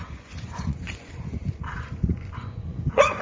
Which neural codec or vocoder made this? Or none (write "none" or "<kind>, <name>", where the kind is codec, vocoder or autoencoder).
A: vocoder, Vocos